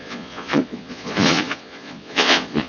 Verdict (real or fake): fake